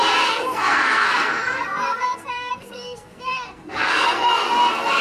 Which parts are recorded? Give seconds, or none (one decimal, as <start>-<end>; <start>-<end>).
none